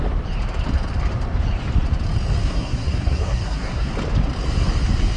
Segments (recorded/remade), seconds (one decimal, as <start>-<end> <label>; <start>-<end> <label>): 0.0-2.4 recorded; 2.4-3.9 remade; 3.9-5.2 recorded

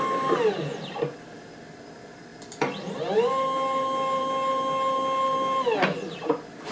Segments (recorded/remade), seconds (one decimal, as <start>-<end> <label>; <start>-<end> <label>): 0.0-6.7 recorded

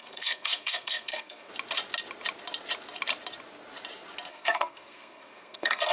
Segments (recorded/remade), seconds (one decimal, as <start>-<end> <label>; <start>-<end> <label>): 0.0-1.5 remade; 1.5-4.3 recorded; 4.3-5.9 remade

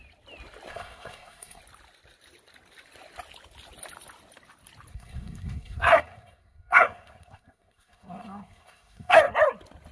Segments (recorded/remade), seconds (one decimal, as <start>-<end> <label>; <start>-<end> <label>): 0.0-0.7 recorded; 0.7-1.6 remade; 1.6-4.9 recorded; 4.9-9.3 remade; 9.3-9.9 recorded

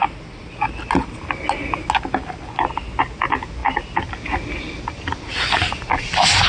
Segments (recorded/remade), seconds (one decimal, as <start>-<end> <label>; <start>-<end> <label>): 0.0-6.5 recorded

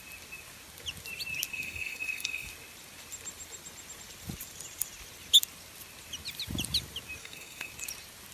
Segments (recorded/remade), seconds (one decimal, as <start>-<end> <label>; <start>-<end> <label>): 0.0-1.5 recorded; 1.5-2.5 remade; 2.5-7.2 recorded; 7.2-7.7 remade; 7.7-8.3 recorded

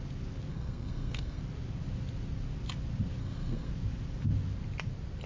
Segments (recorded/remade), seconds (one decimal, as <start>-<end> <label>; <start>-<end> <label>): 0.0-0.5 recorded; 0.5-1.4 remade; 1.4-3.2 recorded; 3.2-3.7 remade; 3.7-5.3 recorded